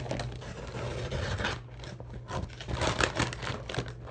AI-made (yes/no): no